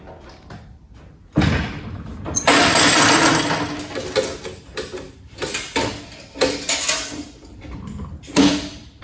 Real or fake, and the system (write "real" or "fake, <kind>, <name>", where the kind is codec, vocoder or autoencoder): real